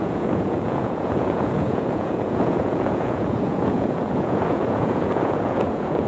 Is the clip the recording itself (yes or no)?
no